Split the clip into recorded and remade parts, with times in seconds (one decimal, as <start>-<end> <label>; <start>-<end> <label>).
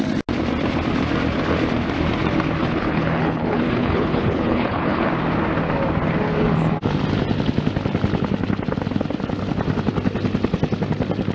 0.0-2.6 recorded; 2.6-5.1 remade; 5.1-11.3 recorded